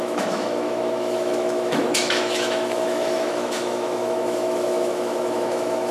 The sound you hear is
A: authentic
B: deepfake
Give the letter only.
B